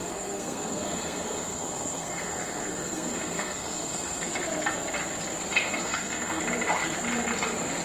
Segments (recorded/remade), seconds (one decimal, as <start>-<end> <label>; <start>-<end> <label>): 0.0-4.3 remade; 4.3-5.6 recorded; 5.6-6.4 remade; 6.4-7.8 recorded